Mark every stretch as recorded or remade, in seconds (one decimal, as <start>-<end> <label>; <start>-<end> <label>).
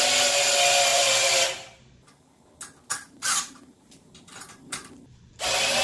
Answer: 0.0-0.9 recorded; 0.9-1.9 remade; 1.9-2.9 recorded; 2.9-5.0 remade; 5.0-5.8 recorded